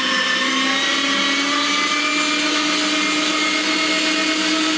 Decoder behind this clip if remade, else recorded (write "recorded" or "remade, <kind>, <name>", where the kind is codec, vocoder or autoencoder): recorded